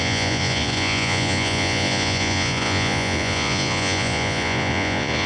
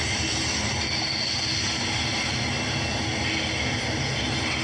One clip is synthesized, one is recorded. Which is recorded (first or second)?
second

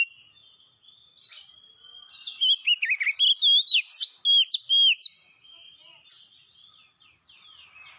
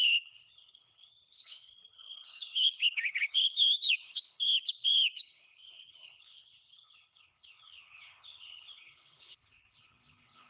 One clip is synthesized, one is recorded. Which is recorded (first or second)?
first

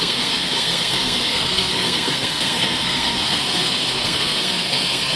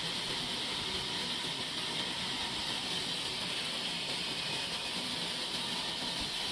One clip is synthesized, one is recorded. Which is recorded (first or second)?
second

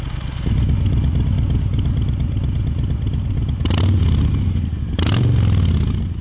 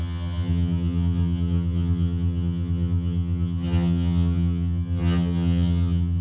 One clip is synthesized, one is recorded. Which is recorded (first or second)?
first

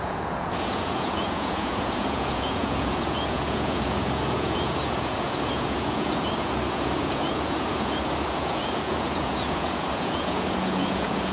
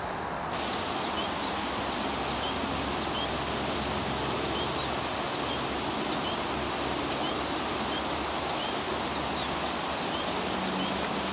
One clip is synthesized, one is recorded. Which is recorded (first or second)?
second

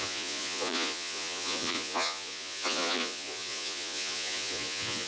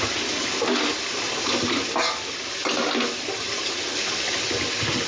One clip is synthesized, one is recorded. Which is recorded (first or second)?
second